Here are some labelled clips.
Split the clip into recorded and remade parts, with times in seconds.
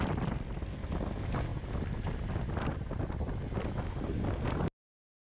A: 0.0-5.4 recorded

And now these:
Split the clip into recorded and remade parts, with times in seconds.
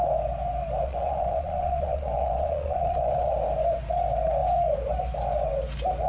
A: 0.0-0.8 recorded; 0.8-3.3 remade; 3.3-6.1 recorded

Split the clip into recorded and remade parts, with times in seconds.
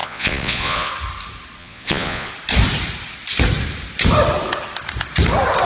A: 0.0-0.9 remade; 0.9-1.6 recorded; 1.6-2.3 remade; 2.3-5.6 recorded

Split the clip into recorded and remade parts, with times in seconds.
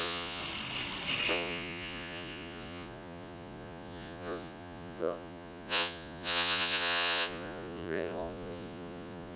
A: 0.0-0.4 remade; 0.4-1.3 recorded; 1.3-9.4 remade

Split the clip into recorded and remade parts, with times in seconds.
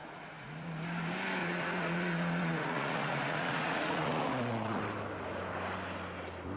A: 0.0-0.7 remade; 0.7-1.4 recorded; 1.4-4.8 remade; 4.8-6.6 recorded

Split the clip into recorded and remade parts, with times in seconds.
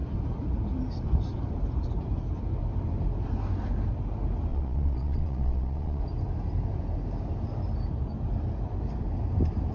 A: 0.0-4.5 recorded; 4.5-6.0 remade; 6.0-9.7 recorded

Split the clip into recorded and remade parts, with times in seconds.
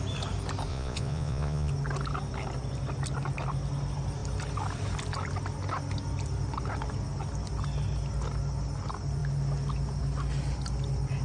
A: 0.0-0.7 recorded; 0.7-1.7 remade; 1.7-11.2 recorded